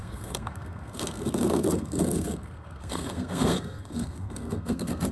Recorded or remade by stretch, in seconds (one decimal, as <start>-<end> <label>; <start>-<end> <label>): 0.0-5.1 remade